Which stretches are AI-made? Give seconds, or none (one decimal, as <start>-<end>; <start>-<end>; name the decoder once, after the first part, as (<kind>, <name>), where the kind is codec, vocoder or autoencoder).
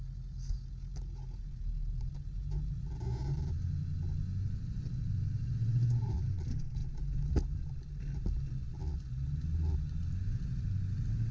none